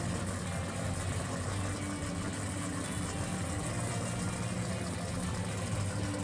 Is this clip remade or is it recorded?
recorded